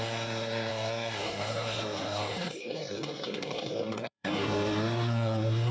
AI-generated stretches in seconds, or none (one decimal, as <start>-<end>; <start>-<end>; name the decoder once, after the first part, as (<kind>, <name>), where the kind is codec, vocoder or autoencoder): 0.0-5.7 (codec, SNAC)